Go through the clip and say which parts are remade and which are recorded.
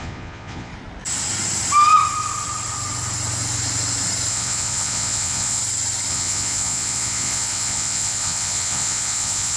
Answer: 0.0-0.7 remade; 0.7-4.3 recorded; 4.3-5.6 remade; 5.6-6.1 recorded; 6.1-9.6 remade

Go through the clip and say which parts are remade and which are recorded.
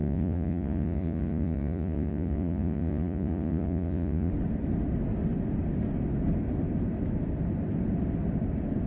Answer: 0.0-4.3 remade; 4.3-8.9 recorded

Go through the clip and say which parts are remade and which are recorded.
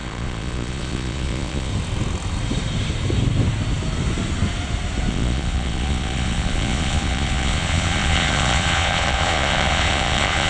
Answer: 0.0-1.7 remade; 1.7-5.1 recorded; 5.1-10.5 remade